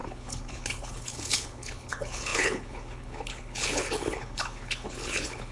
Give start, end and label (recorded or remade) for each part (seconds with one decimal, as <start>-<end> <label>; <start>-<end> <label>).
0.0-5.5 remade